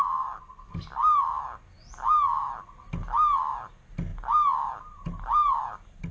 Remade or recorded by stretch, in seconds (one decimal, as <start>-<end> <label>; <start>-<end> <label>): 0.0-6.1 recorded